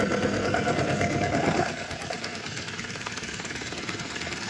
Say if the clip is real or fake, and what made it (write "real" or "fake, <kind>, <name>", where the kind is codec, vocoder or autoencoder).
fake, codec, SNAC